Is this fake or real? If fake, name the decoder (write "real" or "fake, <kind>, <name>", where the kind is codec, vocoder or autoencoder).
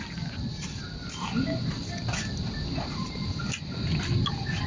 real